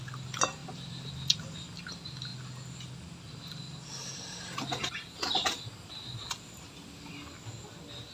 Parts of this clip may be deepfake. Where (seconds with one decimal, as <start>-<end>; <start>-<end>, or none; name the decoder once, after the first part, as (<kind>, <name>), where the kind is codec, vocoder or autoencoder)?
0.6-1.1 (vocoder, BigVGAN v2)